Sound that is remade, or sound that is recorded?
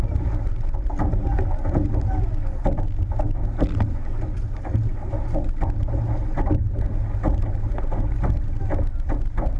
recorded